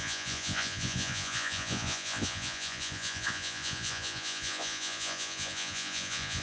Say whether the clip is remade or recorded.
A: remade